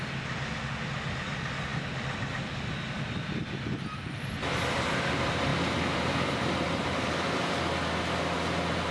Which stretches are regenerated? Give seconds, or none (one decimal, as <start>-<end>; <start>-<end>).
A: none